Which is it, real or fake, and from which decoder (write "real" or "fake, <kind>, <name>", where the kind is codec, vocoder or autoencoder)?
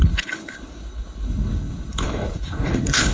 fake, codec, HILCodec